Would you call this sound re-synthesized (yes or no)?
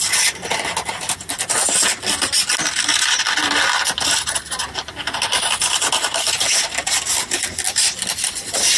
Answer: no